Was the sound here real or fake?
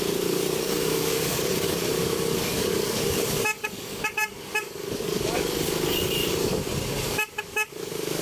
fake